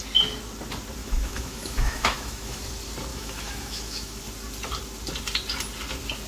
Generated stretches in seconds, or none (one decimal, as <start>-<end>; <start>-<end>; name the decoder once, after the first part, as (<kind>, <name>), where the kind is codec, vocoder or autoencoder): 1.0-2.6 (autoencoder, DAC-VAE); 3.1-4.2